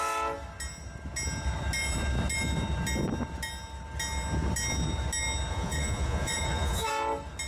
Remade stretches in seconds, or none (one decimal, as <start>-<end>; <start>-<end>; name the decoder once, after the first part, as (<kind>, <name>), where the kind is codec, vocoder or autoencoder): 5.5-6.9 (vocoder, Vocos)